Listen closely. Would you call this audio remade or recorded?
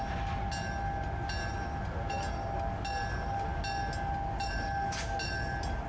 recorded